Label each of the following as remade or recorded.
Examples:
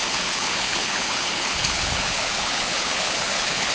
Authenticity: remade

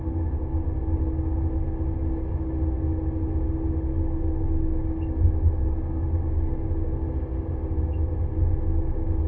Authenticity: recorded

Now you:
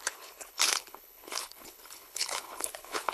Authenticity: remade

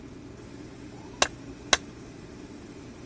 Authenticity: recorded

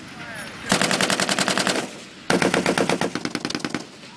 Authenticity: recorded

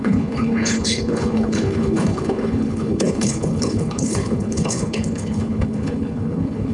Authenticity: remade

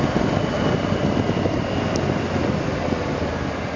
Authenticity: recorded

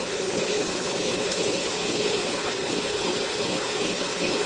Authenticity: remade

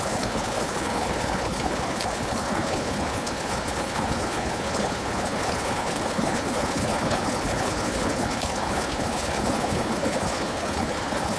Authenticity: remade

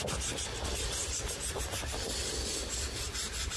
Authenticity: recorded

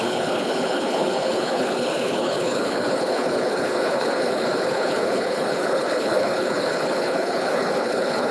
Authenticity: remade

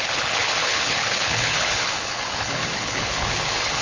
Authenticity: remade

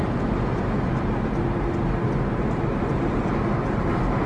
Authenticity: recorded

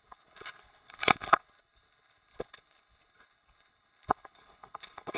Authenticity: remade